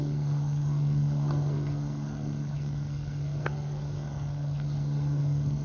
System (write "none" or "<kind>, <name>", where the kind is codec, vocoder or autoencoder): codec, SNAC